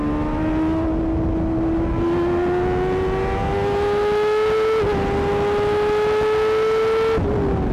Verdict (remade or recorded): recorded